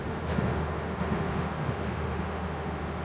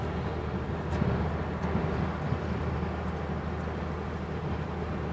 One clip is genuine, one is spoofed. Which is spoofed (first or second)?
first